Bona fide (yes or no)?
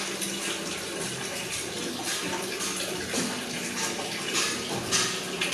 yes